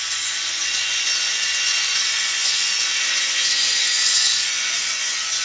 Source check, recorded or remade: remade